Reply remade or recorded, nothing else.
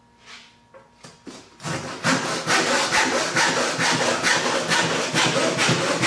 recorded